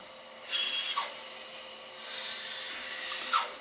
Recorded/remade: recorded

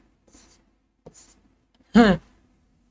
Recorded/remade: recorded